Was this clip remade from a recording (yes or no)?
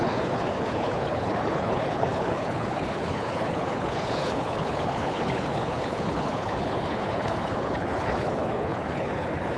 yes